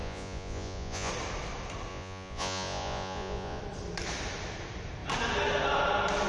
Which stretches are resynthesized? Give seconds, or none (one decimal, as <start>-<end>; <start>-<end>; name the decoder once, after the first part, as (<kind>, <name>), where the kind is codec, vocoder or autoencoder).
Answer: 0.0-1.1 (vocoder, Vocos); 1.9-3.6